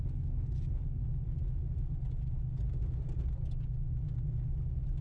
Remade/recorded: recorded